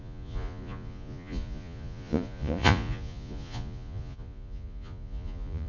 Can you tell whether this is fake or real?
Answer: fake